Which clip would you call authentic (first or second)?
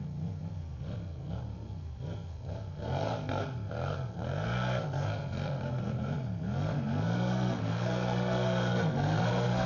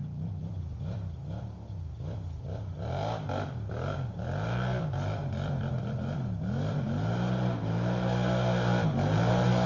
second